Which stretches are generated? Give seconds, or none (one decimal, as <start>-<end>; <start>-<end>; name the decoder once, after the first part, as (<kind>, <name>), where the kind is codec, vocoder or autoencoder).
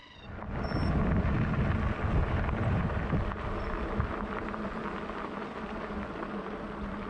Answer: 2.2-3.0 (vocoder, BigVGAN v2)